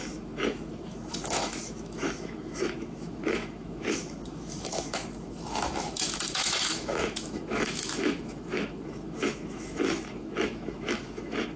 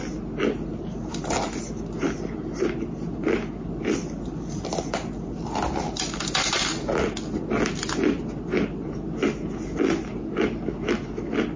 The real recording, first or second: second